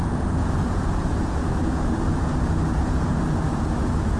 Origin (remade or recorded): remade